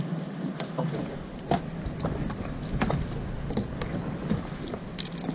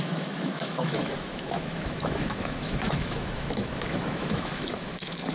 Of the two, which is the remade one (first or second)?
second